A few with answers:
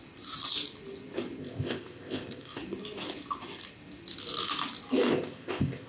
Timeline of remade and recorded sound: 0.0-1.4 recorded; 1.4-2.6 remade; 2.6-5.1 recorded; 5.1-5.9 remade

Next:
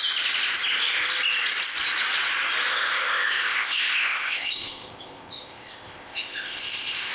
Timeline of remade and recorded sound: 0.0-2.7 recorded; 2.7-7.1 remade

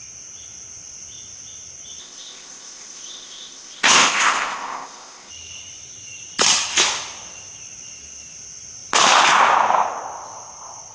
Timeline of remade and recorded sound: 0.0-2.0 recorded; 2.0-5.3 remade; 5.3-10.9 recorded

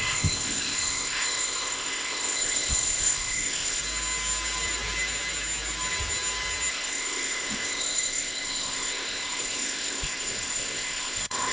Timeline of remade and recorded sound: 0.0-3.8 remade; 3.8-6.7 recorded; 6.7-11.5 remade

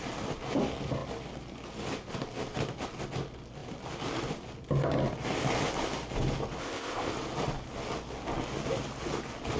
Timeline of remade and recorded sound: 0.0-6.6 recorded; 6.6-7.1 remade; 7.1-9.6 recorded

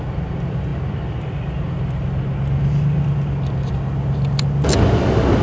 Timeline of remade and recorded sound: 0.0-5.4 recorded

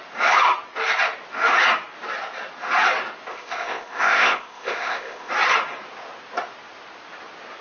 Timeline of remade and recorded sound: 0.0-3.3 recorded; 3.3-5.3 remade; 5.3-7.6 recorded

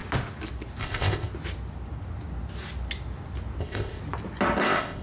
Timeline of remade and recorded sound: 0.0-0.8 recorded; 0.8-1.3 remade; 1.3-3.6 recorded; 3.6-4.0 remade; 4.0-4.6 recorded; 4.6-5.0 remade